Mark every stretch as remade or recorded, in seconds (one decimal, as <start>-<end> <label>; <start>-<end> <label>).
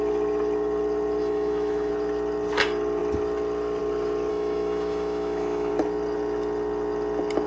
0.0-1.2 recorded; 1.2-1.9 remade; 1.9-4.3 recorded; 4.3-5.7 remade; 5.7-7.5 recorded